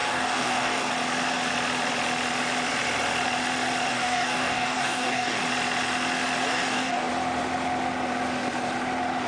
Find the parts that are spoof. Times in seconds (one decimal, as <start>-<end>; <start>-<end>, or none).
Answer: 0.0-0.9; 3.9-5.4; 6.5-7.1